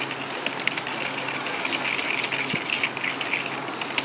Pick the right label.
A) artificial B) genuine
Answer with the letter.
B